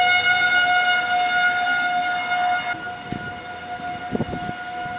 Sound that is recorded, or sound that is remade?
recorded